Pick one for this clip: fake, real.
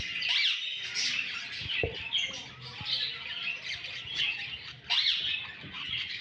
real